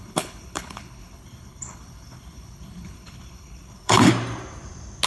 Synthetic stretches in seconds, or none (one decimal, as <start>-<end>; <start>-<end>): 0.0-4.1